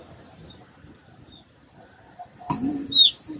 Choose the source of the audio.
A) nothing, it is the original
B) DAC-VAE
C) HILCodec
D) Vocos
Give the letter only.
A